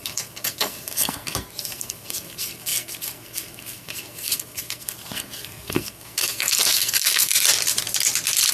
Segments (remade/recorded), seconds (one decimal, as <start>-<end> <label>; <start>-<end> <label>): 0.0-7.3 remade; 7.3-8.5 recorded